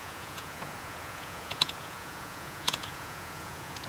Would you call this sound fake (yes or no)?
yes